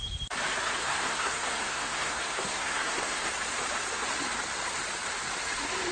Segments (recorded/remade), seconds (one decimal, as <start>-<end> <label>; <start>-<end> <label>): 0.0-0.8 recorded; 0.8-3.3 remade; 3.3-5.9 recorded